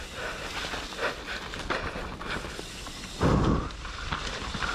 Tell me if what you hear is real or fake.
real